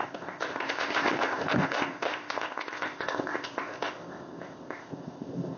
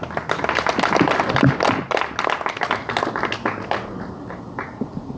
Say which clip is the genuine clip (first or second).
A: second